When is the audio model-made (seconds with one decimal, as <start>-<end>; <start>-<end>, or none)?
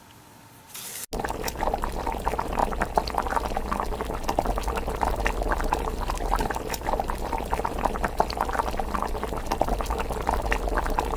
none